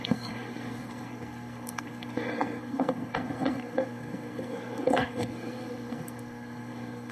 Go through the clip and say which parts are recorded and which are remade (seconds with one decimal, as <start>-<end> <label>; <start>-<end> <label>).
0.0-7.1 remade